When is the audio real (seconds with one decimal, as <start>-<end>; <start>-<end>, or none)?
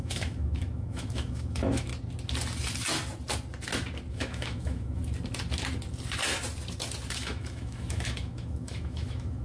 1.9-4.1; 5.0-7.1